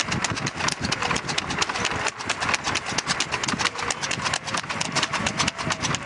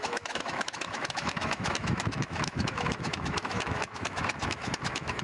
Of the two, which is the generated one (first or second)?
second